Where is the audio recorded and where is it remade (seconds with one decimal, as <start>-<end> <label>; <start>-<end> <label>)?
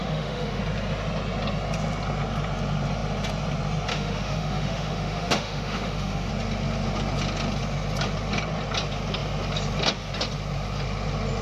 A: 0.0-0.6 remade; 0.6-3.9 recorded; 3.9-6.3 remade; 6.3-11.4 recorded